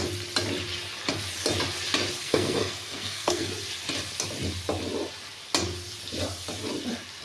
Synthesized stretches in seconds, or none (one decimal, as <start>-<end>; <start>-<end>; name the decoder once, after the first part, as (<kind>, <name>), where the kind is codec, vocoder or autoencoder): 2.2-3.5 (codec, SNAC)